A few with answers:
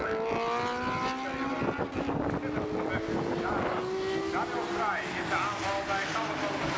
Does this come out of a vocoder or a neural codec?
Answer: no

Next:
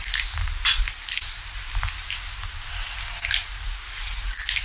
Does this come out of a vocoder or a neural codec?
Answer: no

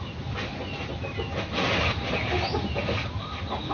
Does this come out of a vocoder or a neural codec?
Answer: no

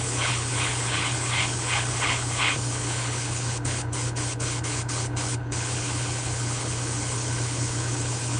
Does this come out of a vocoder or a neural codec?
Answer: yes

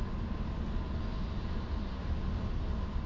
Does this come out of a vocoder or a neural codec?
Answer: no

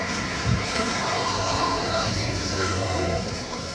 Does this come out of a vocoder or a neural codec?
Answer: yes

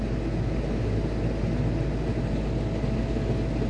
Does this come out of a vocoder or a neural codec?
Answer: no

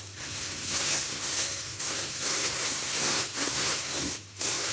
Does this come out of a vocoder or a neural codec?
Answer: yes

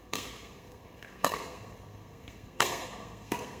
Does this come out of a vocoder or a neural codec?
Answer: yes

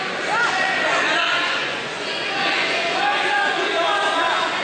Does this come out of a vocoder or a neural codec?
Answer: yes